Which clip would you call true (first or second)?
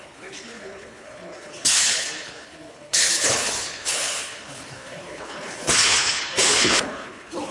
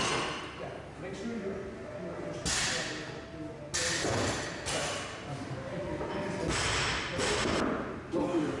second